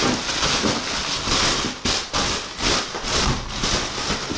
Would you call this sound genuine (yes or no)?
yes